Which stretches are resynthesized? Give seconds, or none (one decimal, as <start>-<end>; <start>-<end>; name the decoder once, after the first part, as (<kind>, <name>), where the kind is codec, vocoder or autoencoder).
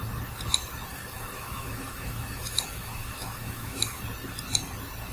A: 0.9-4.0 (autoencoder, DAC-VAE)